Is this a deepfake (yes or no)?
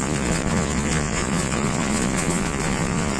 yes